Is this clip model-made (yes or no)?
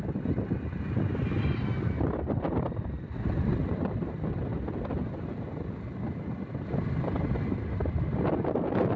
no